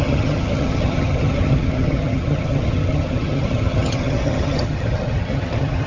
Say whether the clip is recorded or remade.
remade